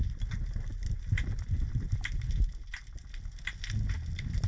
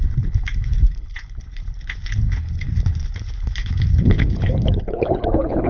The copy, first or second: second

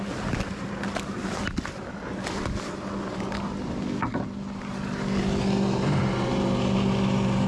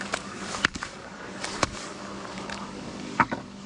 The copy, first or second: second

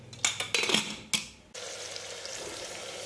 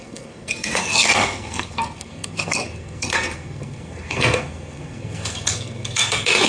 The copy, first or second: second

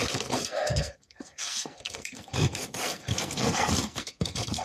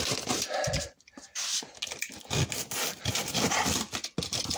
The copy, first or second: first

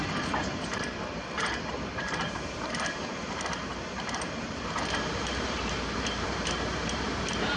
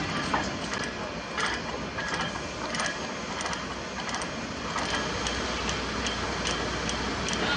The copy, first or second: first